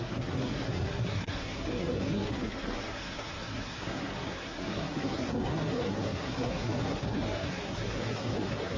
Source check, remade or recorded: remade